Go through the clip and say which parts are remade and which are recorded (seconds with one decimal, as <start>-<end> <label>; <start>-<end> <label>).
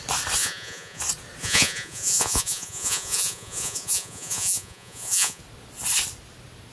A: 0.0-0.4 recorded; 0.4-1.0 remade; 1.0-1.4 recorded; 1.4-5.4 remade; 5.4-6.7 recorded